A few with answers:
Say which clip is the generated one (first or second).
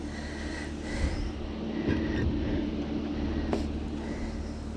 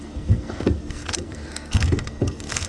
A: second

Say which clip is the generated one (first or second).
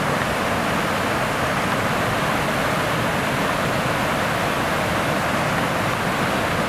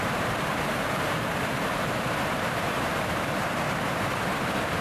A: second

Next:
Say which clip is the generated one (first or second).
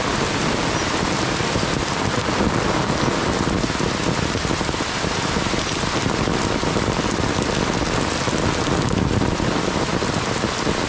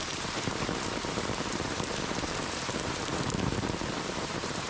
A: second